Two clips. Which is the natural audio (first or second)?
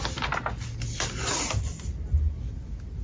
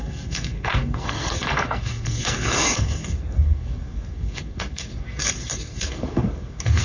first